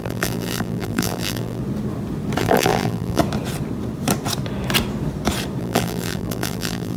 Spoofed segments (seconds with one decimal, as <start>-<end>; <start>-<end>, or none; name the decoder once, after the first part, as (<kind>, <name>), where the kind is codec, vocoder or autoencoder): 0.0-1.6 (vocoder, BigVGAN v2); 2.4-3.2; 5.6-7.0